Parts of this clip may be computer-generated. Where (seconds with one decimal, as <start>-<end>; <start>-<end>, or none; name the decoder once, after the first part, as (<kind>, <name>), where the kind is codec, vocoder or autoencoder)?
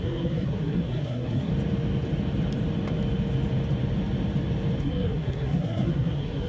0.0-1.5 (codec, SNAC); 4.8-6.5